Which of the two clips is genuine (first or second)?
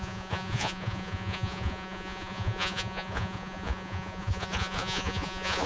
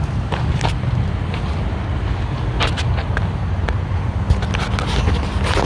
second